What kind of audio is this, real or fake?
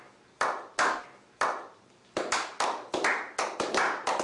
real